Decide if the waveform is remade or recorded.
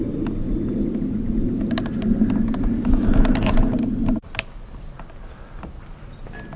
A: recorded